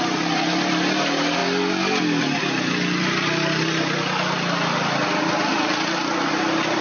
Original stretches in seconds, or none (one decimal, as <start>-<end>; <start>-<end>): 0.0-6.8